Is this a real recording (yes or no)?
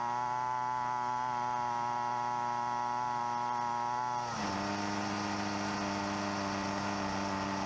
yes